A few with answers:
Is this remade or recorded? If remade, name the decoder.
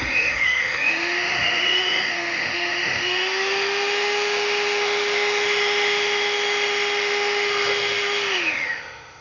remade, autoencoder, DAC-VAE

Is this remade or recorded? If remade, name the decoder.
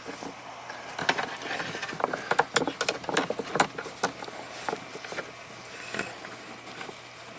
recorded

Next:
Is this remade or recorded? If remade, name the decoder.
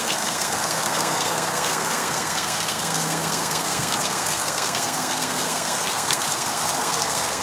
remade, codec, SNAC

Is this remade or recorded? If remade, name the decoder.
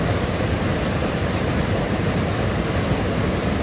remade, vocoder, BigVGAN v2